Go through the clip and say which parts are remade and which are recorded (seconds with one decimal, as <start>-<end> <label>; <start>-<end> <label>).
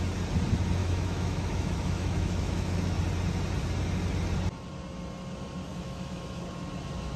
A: 0.0-0.8 recorded; 0.8-3.0 remade; 3.0-5.7 recorded; 5.7-6.4 remade; 6.4-7.2 recorded